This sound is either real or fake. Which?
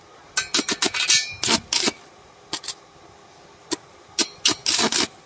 real